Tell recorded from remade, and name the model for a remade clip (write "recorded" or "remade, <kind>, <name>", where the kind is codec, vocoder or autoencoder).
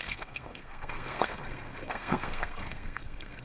remade, codec, SNAC